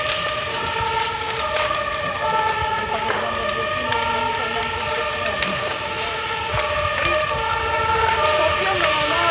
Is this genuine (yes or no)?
yes